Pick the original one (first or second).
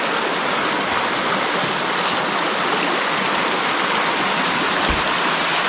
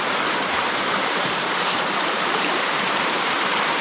first